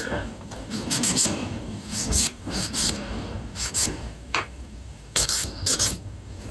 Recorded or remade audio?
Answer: remade